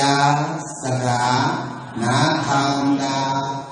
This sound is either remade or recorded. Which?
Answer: remade